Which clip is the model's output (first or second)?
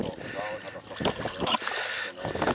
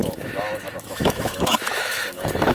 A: second